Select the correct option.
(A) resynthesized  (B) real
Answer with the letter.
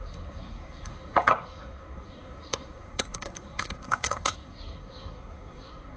A